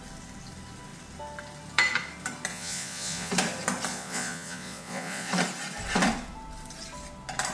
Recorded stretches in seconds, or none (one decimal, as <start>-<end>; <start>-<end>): 0.0-2.5; 3.3-3.9; 5.3-7.5